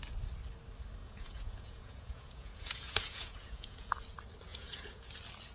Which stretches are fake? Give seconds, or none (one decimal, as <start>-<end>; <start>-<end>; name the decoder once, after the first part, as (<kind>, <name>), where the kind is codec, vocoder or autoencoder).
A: 1.0-4.0 (vocoder, Vocos); 4.5-5.1